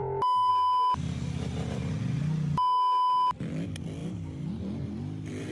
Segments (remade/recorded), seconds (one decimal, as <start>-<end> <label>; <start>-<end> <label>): 0.0-0.5 remade; 0.5-5.5 recorded